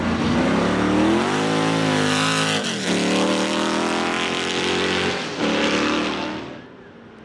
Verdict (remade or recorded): recorded